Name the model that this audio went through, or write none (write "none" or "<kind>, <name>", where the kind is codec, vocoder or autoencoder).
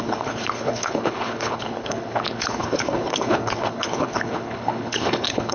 codec, HILCodec